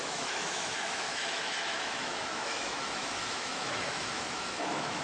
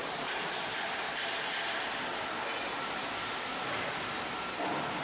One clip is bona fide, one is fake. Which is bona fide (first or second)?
second